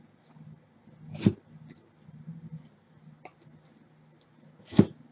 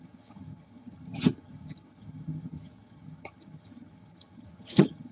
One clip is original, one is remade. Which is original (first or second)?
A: first